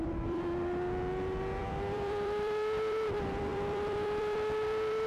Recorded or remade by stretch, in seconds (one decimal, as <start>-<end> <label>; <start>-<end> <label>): 0.0-5.1 remade